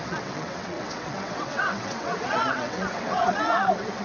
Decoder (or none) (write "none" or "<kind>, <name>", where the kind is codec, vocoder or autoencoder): vocoder, WaveNeXt